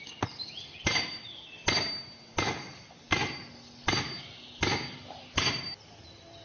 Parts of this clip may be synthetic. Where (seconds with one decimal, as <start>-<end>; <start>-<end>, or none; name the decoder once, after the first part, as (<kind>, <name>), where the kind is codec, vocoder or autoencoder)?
none